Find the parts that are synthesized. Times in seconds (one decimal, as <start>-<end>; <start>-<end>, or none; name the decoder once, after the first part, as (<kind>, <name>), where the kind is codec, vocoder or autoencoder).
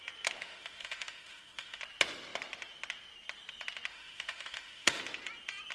0.4-1.8 (autoencoder, DAC-VAE); 3.9-5.0